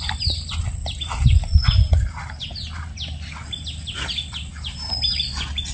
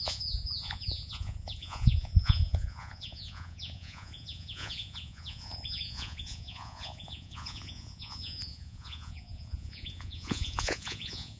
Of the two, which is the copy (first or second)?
second